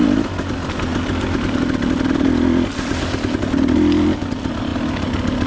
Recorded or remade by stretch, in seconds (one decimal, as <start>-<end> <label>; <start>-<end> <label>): 0.0-5.5 recorded